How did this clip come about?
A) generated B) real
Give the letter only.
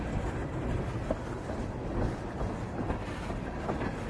B